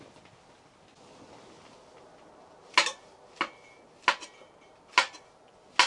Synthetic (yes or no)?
no